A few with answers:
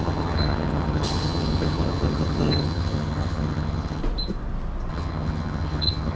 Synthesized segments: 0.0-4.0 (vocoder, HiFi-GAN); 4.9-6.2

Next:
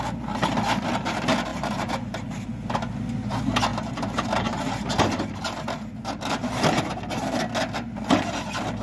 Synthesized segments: 1.5-2.7 (vocoder, BigVGAN v2); 3.7-6.8

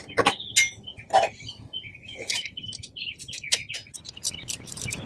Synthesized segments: 1.9-5.1 (vocoder, BigVGAN v2)

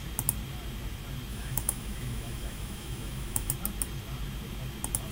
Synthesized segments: 1.3-3.5 (autoencoder, DAC-VAE)

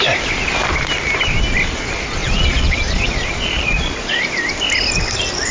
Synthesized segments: 2.2-4.2 (vocoder, Vocos)

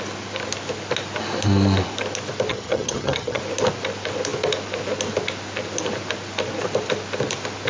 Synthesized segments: 2.5-3.4 (vocoder, HiFi-GAN)

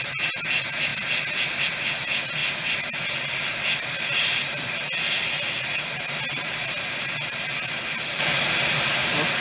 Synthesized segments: none